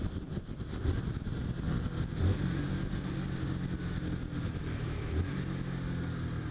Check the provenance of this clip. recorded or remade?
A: recorded